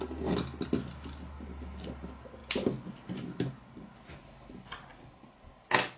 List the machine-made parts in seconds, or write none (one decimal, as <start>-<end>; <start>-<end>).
none